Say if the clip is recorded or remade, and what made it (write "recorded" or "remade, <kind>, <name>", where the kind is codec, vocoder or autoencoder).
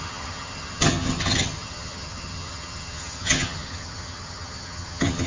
remade, vocoder, HiFi-GAN